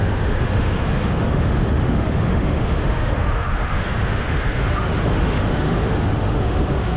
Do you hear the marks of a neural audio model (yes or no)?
yes